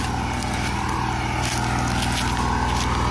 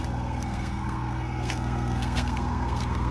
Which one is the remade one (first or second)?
second